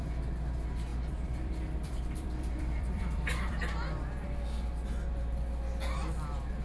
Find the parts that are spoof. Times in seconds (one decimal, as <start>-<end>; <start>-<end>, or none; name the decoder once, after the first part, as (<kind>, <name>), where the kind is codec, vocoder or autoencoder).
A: 0.9-3.6 (vocoder, BigVGAN v2)